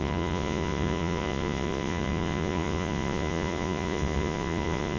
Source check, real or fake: fake